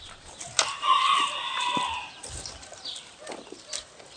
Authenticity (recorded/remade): recorded